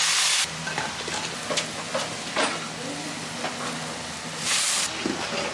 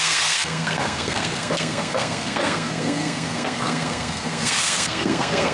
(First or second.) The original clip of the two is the first